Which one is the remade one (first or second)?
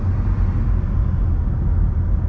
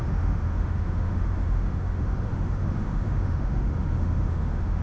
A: second